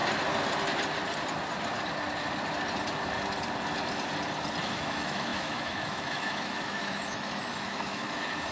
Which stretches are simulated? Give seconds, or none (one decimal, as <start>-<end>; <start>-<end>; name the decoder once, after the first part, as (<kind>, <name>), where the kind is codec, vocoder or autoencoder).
4.6-8.5 (autoencoder, DAC-VAE)